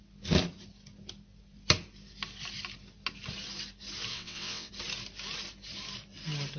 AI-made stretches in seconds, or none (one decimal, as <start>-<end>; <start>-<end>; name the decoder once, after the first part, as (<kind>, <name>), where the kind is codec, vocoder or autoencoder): 4.1-4.7 (vocoder, WaveNeXt)